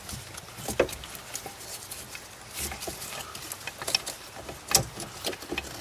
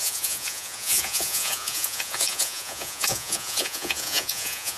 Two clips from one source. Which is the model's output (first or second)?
second